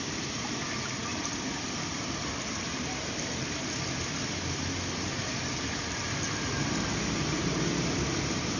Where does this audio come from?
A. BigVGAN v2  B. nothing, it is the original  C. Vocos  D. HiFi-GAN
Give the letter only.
B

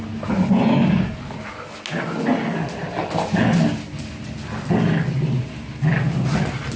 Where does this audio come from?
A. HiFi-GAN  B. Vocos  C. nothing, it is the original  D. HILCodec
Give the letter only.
C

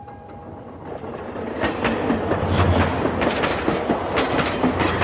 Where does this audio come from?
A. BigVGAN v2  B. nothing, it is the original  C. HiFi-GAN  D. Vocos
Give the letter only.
B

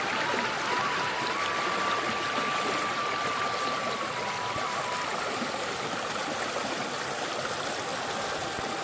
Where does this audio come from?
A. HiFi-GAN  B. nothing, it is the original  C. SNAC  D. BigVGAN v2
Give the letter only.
B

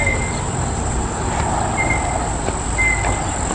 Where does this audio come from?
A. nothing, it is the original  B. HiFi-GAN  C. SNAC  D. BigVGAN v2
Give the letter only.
A